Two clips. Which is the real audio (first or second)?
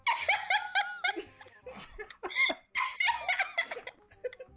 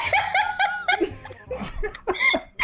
first